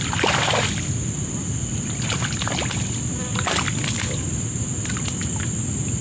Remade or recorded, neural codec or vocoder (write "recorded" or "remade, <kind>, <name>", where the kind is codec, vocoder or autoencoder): recorded